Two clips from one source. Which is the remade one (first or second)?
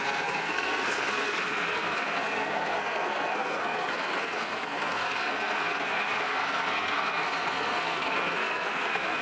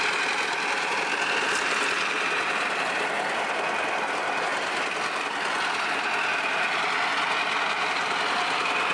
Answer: first